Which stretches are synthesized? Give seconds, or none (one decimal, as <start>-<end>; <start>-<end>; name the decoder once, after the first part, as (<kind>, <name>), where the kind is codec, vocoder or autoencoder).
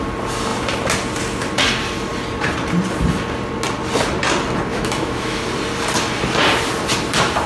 4.7-5.4 (autoencoder, DAC-VAE)